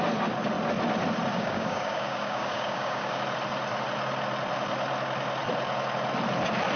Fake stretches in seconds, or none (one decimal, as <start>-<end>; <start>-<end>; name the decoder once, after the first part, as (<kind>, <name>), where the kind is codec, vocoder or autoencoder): 1.3-3.2 (codec, DAC)